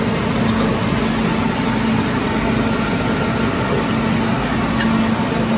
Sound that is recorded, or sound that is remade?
recorded